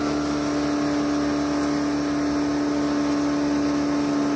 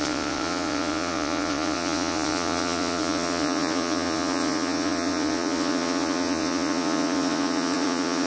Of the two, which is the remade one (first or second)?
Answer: second